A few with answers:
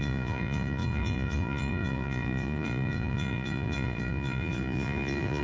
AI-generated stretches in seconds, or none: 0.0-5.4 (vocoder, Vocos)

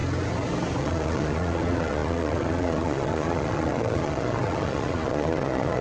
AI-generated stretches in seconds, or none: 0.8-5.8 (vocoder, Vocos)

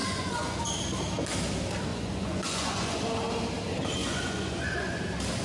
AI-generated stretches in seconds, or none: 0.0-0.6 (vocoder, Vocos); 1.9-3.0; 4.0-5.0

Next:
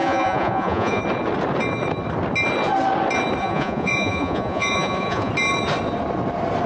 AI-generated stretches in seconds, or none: 0.0-1.0 (vocoder, Vocos); 3.4-5.3

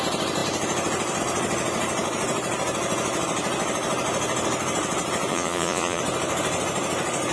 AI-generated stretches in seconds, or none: 5.3-6.0 (vocoder, Vocos)